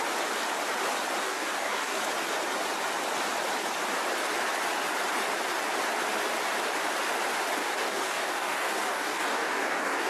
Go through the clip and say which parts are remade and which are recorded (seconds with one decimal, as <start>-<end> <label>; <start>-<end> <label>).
0.0-1.2 recorded; 1.2-2.0 remade; 2.0-7.6 recorded; 7.6-10.1 remade